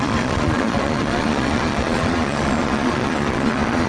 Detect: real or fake fake